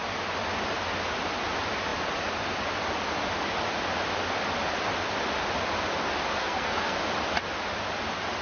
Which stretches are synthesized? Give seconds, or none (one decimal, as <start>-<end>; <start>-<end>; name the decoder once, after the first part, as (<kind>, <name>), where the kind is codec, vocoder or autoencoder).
6.4-7.0 (codec, SNAC)